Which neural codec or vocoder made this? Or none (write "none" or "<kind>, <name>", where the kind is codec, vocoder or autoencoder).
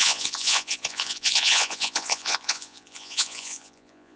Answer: vocoder, Vocos